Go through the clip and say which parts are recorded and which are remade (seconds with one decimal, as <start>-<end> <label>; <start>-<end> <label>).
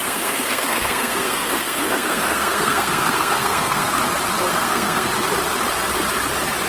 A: 0.0-4.0 remade; 4.0-4.5 recorded; 4.5-5.1 remade; 5.1-6.7 recorded